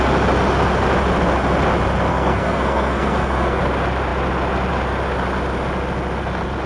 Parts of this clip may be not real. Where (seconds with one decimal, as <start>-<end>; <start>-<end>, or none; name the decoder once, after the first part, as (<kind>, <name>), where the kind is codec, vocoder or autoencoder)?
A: 2.1-3.6 (codec, SNAC)